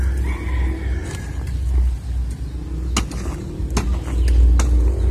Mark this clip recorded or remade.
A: recorded